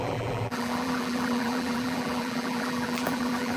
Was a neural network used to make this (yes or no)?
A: yes